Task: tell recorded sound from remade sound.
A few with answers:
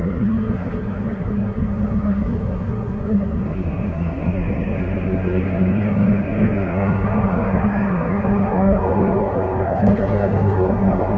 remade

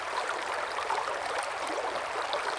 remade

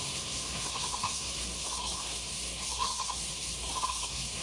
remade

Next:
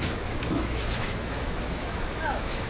remade